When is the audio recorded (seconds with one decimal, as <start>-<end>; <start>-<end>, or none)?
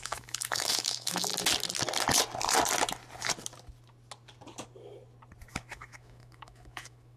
1.3-5.5